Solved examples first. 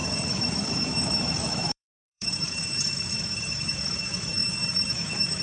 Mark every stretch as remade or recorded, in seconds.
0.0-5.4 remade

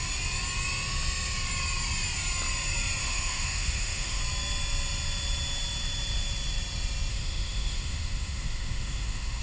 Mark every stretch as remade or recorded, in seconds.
0.0-3.0 recorded; 3.0-4.2 remade; 4.2-7.1 recorded; 7.1-9.4 remade